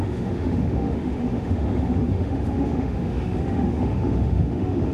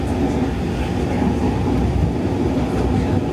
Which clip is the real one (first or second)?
second